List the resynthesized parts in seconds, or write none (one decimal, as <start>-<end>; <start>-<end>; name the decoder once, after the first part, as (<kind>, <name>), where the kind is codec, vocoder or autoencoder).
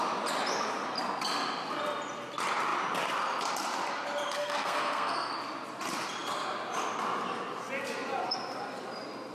4.4-5.3 (codec, SNAC)